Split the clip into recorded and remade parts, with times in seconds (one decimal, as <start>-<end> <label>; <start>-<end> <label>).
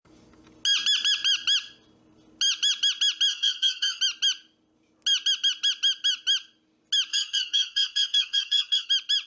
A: 0.0-3.3 recorded; 3.3-4.0 remade; 4.0-7.1 recorded; 7.1-8.9 remade; 8.9-9.3 recorded